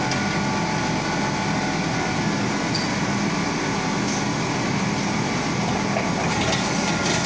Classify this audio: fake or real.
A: real